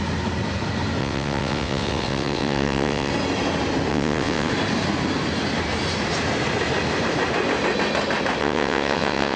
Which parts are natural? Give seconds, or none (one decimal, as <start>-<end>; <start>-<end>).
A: 0.0-1.0; 3.1-3.9; 4.5-8.4